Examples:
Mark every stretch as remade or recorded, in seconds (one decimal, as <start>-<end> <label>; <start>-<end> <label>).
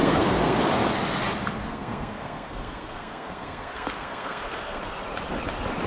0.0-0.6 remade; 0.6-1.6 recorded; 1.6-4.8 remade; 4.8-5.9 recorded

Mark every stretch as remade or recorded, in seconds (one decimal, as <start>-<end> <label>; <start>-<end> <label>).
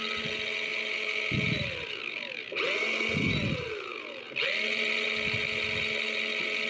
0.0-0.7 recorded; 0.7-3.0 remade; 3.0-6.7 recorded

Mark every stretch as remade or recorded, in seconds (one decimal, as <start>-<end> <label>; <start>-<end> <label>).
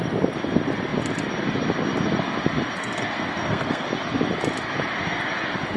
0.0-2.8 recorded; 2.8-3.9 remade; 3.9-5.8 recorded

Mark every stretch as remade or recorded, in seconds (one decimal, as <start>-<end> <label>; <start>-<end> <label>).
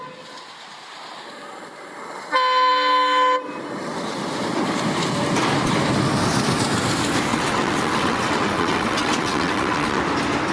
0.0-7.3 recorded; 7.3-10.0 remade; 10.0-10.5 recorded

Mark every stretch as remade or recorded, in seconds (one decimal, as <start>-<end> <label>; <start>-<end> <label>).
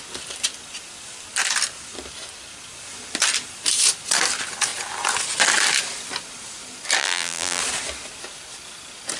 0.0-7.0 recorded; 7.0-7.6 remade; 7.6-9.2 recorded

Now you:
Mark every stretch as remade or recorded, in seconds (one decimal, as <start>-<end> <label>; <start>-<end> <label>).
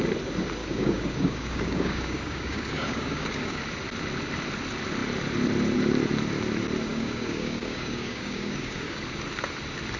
0.0-0.6 recorded; 0.6-3.6 remade; 3.6-6.9 recorded; 6.9-9.0 remade; 9.0-10.0 recorded